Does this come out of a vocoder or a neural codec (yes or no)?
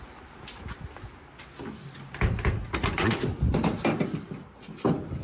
no